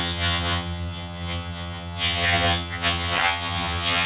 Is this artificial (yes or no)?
yes